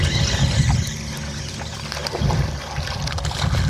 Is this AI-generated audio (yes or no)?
no